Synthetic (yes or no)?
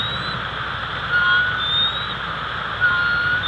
no